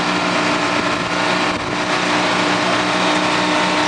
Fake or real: real